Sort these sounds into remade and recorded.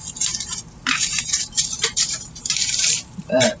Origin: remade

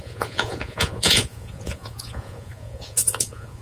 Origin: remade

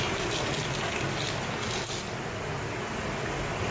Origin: recorded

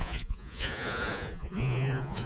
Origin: remade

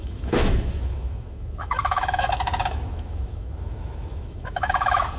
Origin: remade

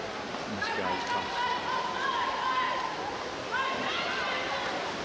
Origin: recorded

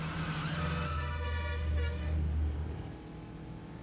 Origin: recorded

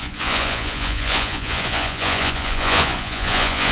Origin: remade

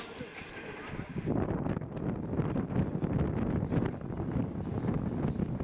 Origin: recorded